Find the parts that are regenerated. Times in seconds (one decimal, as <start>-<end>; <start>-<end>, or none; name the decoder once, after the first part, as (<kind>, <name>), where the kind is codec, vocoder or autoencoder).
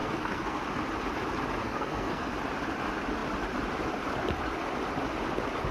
0.0-0.6 (codec, SNAC); 1.6-2.3